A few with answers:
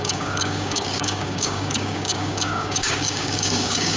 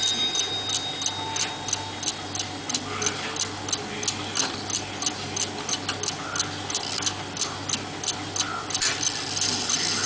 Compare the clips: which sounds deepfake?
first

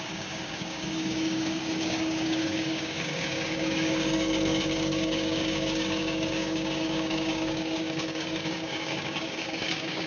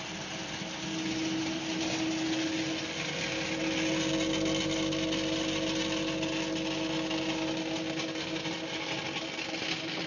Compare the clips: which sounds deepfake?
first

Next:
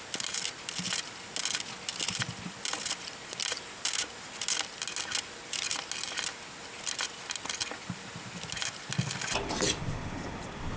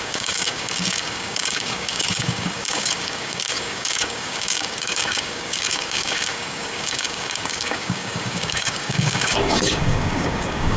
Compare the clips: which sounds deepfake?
second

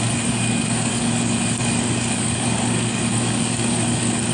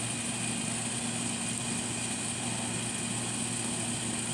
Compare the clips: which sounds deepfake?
first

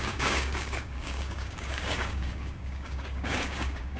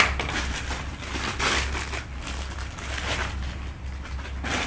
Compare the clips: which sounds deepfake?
first